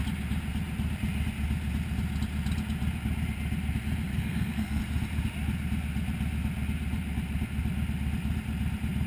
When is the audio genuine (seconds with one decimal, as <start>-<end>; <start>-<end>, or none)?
0.0-4.1; 4.8-9.1